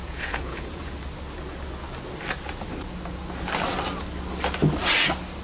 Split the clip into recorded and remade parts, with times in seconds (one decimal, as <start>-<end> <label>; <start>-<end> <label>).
0.0-0.9 remade; 0.9-5.4 recorded